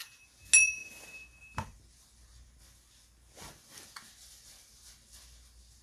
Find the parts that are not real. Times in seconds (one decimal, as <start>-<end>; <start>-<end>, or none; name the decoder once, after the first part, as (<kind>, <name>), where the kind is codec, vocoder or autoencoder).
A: none